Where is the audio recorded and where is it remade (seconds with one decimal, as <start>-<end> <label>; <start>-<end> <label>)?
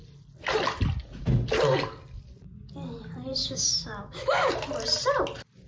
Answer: 0.0-3.4 recorded; 3.4-4.5 remade; 4.5-5.7 recorded